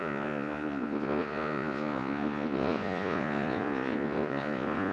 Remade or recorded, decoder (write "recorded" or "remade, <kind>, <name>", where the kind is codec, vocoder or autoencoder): remade, vocoder, Vocos